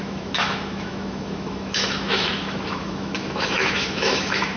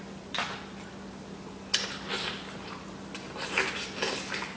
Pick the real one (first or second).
second